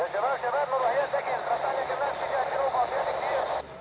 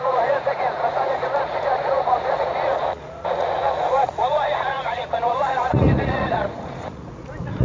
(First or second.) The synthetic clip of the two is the second